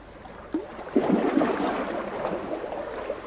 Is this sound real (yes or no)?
yes